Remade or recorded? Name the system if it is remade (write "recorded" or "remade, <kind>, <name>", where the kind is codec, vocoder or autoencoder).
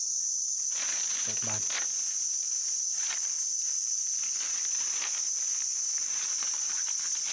recorded